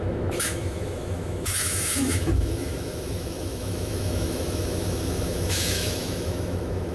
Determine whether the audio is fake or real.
fake